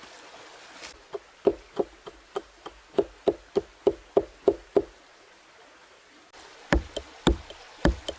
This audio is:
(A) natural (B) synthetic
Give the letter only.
A